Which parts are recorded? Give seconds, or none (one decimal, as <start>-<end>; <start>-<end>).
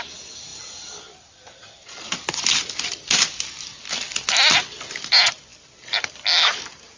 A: 0.0-0.5; 2.4-7.0